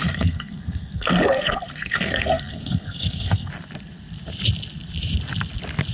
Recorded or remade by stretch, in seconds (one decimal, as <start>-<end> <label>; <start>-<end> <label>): 0.0-3.5 remade; 3.5-5.9 recorded